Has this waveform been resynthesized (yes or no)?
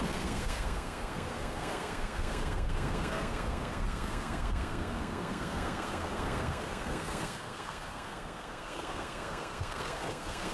yes